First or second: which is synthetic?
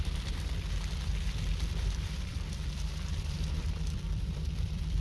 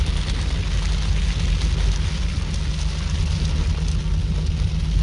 first